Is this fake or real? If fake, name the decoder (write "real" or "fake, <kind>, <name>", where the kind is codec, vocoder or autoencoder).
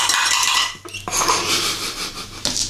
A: real